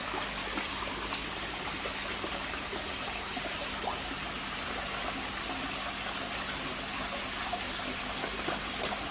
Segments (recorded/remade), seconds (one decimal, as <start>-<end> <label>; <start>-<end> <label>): 0.0-9.1 recorded